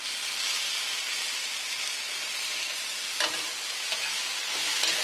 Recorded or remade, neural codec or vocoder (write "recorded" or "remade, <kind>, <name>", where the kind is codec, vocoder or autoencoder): recorded